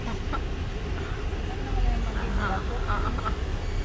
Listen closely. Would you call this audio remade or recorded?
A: recorded